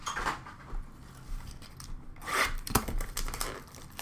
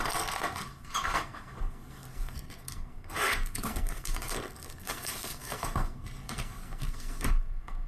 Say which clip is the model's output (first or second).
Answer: second